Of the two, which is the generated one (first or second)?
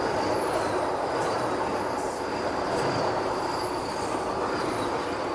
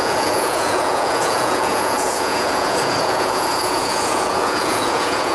second